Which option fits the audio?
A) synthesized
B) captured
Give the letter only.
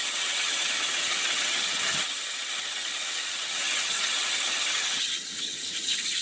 A